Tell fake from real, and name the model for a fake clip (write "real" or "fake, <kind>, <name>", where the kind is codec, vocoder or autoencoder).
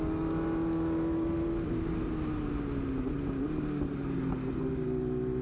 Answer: real